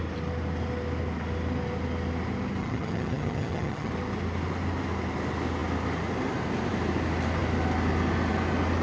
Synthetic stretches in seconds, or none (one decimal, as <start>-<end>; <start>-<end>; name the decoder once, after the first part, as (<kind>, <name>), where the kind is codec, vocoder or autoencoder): 2.6-3.9 (vocoder, HiFi-GAN)